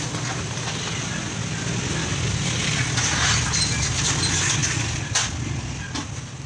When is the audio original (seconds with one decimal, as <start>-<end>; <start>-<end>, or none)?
0.0-6.5